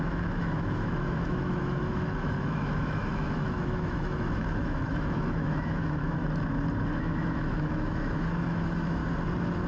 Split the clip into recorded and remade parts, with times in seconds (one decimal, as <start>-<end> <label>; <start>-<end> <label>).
0.0-6.2 remade; 6.2-7.0 recorded; 7.0-9.0 remade; 9.0-9.7 recorded